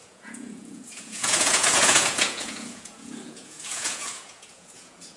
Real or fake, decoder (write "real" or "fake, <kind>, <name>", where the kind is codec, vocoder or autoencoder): fake, vocoder, Vocos